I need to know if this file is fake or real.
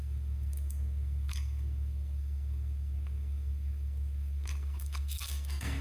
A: fake